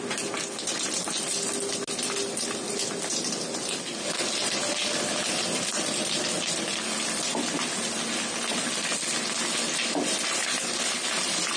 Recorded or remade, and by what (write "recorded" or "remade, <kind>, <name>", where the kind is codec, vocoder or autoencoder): recorded